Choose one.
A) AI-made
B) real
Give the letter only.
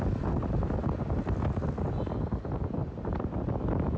B